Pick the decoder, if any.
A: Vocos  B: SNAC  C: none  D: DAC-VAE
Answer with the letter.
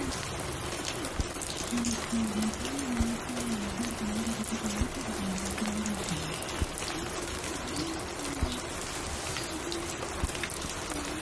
C